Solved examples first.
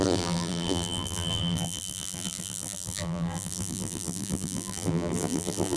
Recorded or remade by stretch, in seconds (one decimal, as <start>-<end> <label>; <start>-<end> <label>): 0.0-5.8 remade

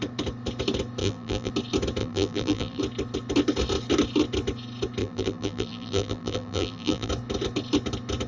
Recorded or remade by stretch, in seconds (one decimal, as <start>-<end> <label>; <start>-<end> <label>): 0.0-1.0 recorded; 1.0-1.5 remade; 1.5-2.0 recorded; 2.0-2.8 remade; 2.8-5.0 recorded; 5.0-7.1 remade; 7.1-8.3 recorded

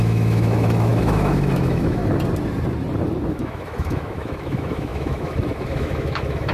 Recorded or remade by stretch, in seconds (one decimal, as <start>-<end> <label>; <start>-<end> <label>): 0.0-2.0 remade; 2.0-3.3 recorded; 3.3-6.5 remade

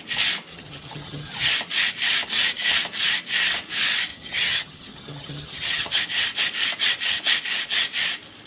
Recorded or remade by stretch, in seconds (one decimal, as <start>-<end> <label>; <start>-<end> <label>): 0.0-0.5 recorded; 0.5-1.5 remade; 1.5-4.1 recorded; 4.1-6.0 remade; 6.0-8.5 recorded